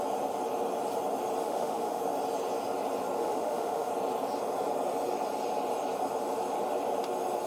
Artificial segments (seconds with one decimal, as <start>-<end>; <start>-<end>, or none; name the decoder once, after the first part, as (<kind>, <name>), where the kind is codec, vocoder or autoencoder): 1.4-2.0 (autoencoder, DAC-VAE); 3.2-3.9